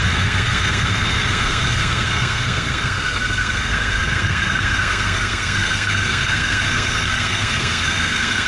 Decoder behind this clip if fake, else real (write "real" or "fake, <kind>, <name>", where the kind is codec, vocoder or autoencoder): fake, codec, SNAC